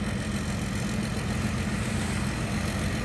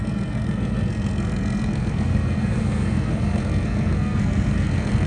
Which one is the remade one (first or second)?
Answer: second